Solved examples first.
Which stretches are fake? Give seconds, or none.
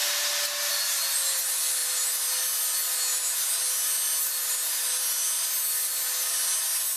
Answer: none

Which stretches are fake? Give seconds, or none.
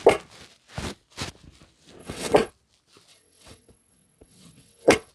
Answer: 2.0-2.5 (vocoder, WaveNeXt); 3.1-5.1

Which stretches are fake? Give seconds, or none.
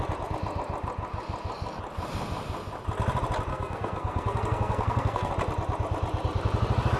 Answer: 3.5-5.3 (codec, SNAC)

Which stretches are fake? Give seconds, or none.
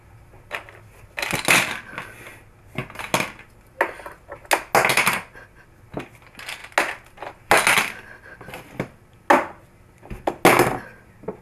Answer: none